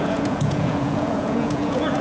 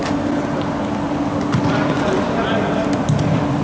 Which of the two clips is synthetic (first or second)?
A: first